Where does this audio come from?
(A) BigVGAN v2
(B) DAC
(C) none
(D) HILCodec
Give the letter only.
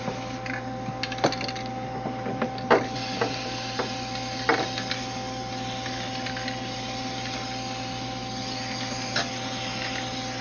C